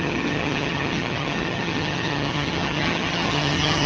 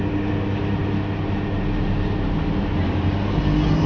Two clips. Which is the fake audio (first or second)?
first